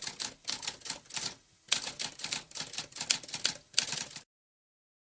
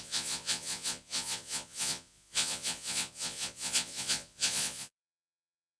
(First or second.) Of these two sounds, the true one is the first